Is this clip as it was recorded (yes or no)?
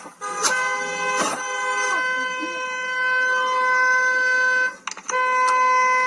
yes